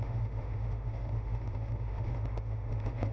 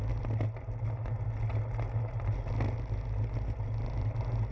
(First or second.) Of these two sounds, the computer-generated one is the first